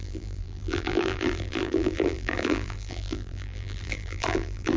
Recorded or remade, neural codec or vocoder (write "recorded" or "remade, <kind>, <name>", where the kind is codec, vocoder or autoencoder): remade, vocoder, BigVGAN v2